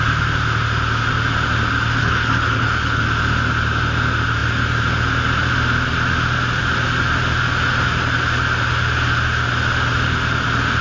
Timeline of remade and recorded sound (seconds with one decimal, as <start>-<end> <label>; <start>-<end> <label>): 0.0-2.0 recorded; 2.0-3.0 remade; 3.0-10.8 recorded

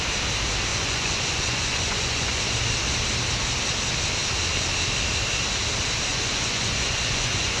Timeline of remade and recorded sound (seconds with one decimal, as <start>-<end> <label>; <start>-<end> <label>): 0.0-0.7 recorded; 0.7-2.5 remade; 2.5-6.1 recorded; 6.1-7.6 remade

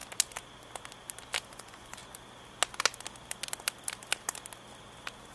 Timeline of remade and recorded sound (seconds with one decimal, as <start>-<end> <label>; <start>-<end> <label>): 0.0-1.5 recorded; 1.5-2.0 remade; 2.0-5.3 recorded

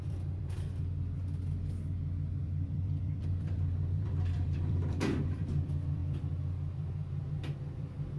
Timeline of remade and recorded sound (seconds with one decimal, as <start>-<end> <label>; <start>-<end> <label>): 0.0-1.2 remade; 1.2-2.4 recorded; 2.4-8.2 remade

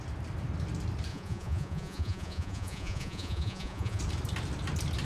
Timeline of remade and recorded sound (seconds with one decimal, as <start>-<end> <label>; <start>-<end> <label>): 0.0-1.1 recorded; 1.1-4.0 remade; 4.0-5.0 recorded